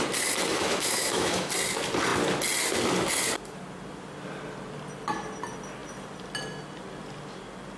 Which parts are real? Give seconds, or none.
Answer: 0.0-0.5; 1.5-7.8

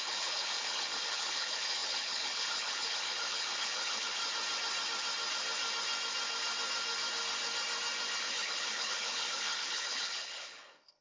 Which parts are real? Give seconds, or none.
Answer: 4.2-8.2